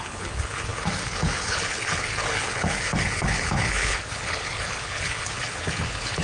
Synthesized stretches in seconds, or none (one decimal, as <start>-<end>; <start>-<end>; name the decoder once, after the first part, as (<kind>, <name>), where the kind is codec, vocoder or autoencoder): 0.0-6.2 (codec, HILCodec)